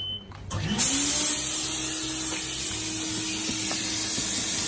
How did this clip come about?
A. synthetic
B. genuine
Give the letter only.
B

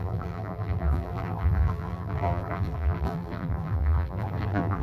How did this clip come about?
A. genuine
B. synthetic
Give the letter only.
B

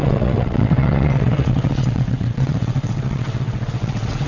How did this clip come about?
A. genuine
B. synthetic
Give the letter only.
B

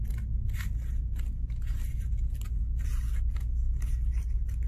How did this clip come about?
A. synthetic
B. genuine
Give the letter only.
B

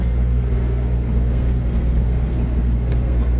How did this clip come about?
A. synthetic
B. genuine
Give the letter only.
A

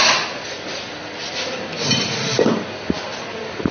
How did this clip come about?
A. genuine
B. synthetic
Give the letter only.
A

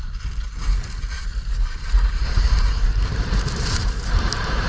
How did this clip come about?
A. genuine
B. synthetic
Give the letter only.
B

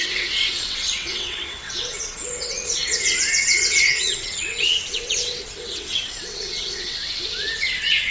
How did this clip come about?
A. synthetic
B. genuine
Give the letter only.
A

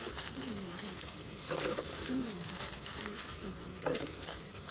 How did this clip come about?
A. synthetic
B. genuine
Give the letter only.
A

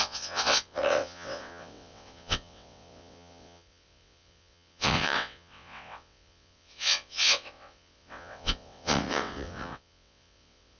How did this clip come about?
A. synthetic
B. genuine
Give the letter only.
A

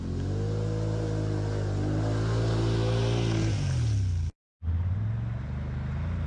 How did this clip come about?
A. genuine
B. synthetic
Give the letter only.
A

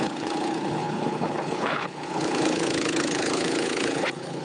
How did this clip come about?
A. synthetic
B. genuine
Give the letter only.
A